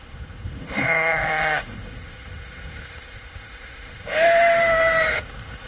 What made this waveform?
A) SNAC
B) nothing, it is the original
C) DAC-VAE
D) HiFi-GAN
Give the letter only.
C